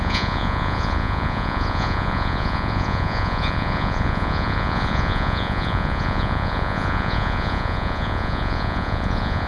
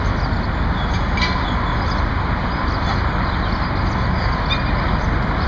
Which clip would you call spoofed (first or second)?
first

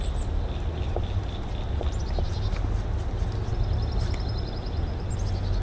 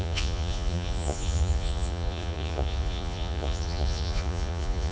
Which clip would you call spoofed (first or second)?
second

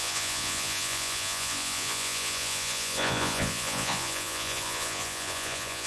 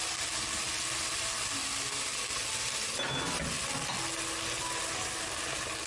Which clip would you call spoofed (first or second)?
first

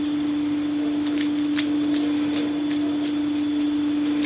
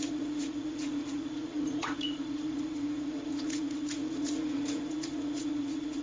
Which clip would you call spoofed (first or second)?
second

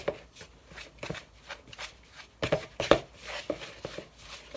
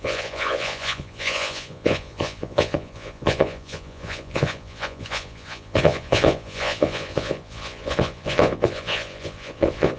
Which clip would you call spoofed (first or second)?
second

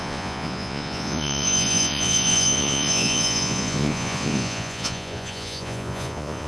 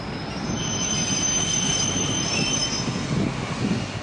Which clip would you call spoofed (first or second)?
first